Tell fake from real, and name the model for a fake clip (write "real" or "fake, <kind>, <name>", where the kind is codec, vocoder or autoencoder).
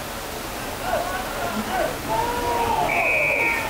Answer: real